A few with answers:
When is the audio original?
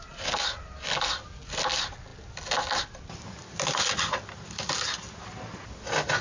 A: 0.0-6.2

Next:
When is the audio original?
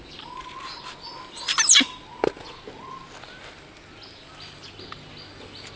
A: 0.0-5.8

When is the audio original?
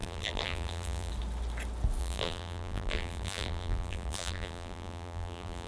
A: 1.1-2.0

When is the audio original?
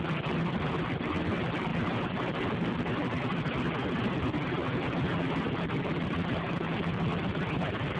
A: 0.0-8.0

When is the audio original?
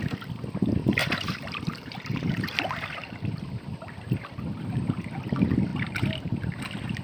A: 0.0-1.0; 5.2-5.7; 6.6-7.0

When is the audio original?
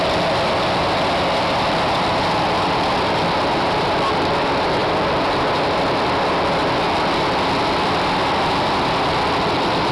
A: 0.0-9.9